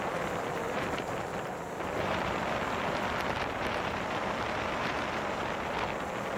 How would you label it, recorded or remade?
remade